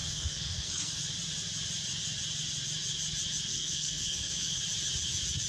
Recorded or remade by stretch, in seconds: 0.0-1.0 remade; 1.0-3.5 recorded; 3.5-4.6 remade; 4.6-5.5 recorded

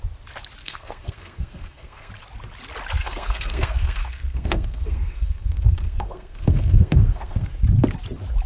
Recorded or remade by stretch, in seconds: 0.0-0.6 recorded; 0.6-2.1 remade; 2.1-3.0 recorded; 3.0-7.5 remade; 7.5-8.5 recorded